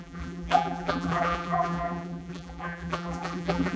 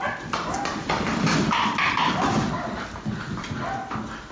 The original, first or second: second